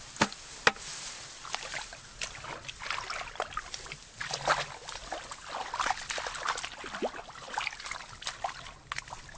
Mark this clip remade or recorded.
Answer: recorded